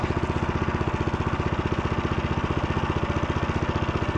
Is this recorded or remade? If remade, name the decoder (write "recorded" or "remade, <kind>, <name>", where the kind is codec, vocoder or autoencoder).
recorded